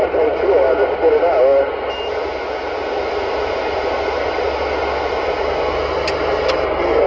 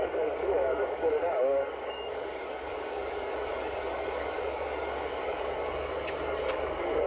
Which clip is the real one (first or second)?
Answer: first